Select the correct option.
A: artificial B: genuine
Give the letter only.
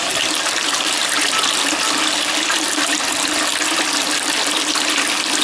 B